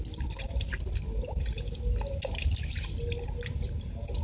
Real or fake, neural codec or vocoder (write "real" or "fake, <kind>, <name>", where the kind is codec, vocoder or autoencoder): real